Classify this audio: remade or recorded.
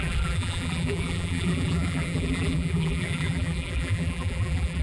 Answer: remade